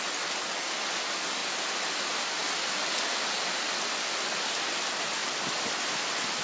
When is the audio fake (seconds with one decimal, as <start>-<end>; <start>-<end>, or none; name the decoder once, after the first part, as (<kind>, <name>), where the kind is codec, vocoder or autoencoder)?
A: none